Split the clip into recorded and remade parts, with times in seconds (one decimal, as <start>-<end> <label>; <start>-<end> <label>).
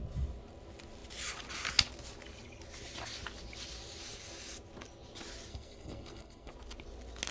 0.0-5.5 recorded; 5.5-6.5 remade; 6.5-7.3 recorded